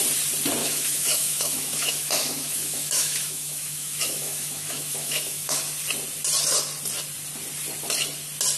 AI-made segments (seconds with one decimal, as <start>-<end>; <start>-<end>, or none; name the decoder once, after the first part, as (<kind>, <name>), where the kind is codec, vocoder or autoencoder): 0.6-5.6 (autoencoder, DAC-VAE)